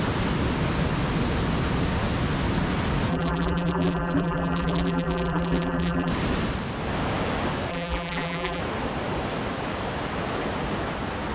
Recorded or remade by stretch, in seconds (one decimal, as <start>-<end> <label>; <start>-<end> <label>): 0.0-3.1 recorded; 3.1-6.1 remade; 6.1-7.7 recorded; 7.7-8.6 remade; 8.6-11.3 recorded